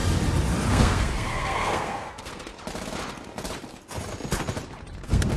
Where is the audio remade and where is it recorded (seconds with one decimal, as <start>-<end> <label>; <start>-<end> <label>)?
0.0-0.7 recorded; 0.7-2.5 remade; 2.5-5.0 recorded; 5.0-5.4 remade